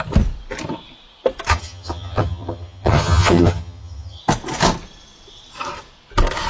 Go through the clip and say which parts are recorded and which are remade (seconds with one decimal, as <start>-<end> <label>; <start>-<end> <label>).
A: 0.0-1.5 recorded; 1.5-4.2 remade; 4.2-6.5 recorded